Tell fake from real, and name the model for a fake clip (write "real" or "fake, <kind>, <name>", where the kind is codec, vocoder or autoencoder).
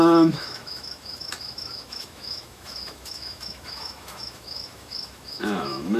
fake, autoencoder, DAC-VAE